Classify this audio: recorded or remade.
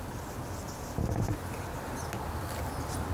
recorded